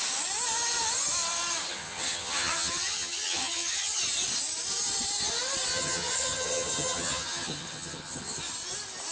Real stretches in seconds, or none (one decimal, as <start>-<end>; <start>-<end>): 0.0-1.7; 4.0-5.7; 8.4-9.1